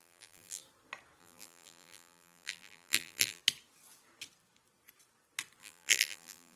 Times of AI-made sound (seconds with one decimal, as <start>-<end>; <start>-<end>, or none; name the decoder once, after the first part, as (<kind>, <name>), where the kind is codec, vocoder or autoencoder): 0.0-0.6 (vocoder, BigVGAN v2); 1.2-3.4; 5.6-6.6